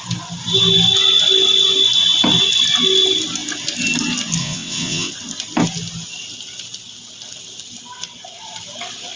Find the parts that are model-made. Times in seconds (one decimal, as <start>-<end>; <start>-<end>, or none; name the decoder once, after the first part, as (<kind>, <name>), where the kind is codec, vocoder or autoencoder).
4.4-5.1 (vocoder, WaveNeXt)

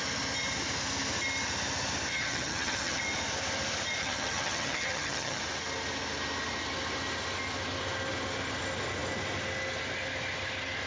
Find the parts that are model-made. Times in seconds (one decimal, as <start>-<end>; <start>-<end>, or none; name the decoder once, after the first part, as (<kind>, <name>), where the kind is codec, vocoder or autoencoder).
2.1-3.0 (vocoder, HiFi-GAN); 4.0-5.4

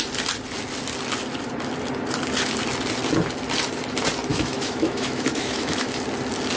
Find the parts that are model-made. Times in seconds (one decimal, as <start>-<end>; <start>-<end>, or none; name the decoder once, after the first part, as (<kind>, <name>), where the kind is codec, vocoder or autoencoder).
4.3-6.0 (autoencoder, DAC-VAE)

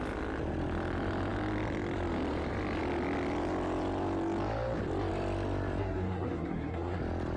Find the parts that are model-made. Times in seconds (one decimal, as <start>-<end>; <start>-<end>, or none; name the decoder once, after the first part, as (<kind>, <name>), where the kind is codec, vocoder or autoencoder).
5.8-7.0 (codec, SNAC)

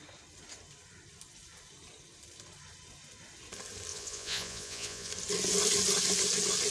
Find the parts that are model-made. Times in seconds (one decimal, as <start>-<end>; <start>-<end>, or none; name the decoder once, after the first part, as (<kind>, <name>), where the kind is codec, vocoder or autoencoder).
3.9-5.1 (vocoder, Vocos)

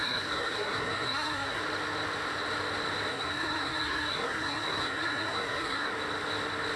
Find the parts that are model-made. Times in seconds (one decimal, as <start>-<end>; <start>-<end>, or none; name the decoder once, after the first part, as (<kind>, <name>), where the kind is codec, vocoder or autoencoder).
0.0-1.6 (codec, SNAC); 3.1-5.9

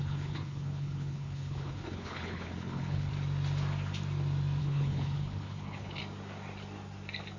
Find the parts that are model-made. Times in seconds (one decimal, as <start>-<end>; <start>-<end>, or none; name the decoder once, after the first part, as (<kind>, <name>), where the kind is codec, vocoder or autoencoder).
0.0-3.1 (codec, HILCodec); 4.6-6.0

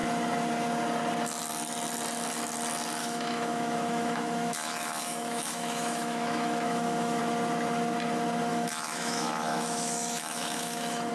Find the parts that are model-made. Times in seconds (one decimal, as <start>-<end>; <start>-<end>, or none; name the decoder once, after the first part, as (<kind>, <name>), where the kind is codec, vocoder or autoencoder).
3.0-7.2 (autoencoder, DAC-VAE); 8.5-11.1